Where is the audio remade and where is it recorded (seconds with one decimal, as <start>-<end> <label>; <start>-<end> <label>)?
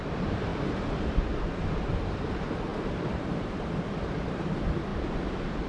0.0-5.7 remade